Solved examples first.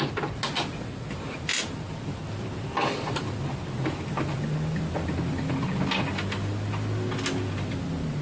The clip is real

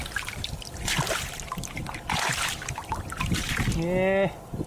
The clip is real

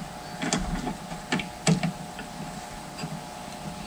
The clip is real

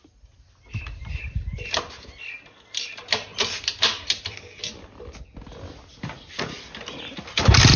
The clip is real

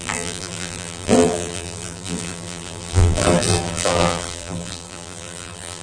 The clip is fake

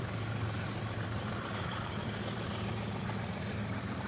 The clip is fake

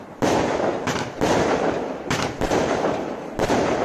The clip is real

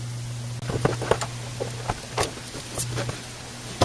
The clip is real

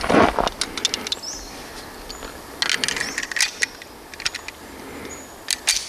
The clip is real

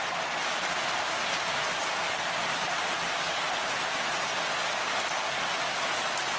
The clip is real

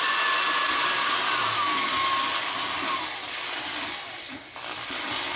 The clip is real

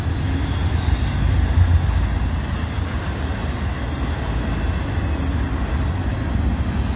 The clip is real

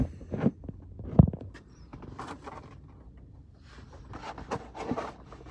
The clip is fake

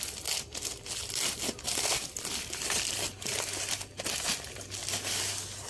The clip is real